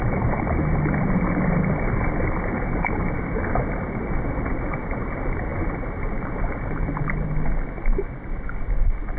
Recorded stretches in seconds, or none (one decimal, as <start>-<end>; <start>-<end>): 0.0-9.2